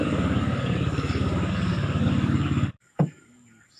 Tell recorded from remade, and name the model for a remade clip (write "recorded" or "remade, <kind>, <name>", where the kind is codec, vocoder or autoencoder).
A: remade, codec, DAC